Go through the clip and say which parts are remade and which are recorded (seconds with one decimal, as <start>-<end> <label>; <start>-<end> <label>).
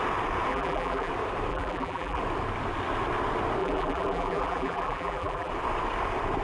0.0-0.5 recorded; 0.5-1.1 remade; 1.1-1.5 recorded; 1.5-2.2 remade; 2.2-3.6 recorded; 3.6-5.5 remade; 5.5-6.4 recorded